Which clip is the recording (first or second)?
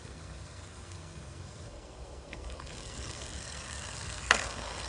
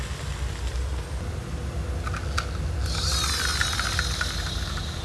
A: second